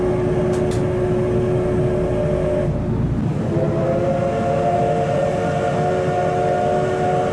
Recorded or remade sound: recorded